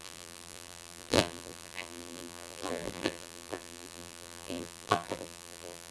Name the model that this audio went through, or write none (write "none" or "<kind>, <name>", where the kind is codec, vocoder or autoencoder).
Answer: vocoder, BigVGAN v2